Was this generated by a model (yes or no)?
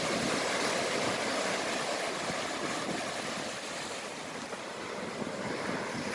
no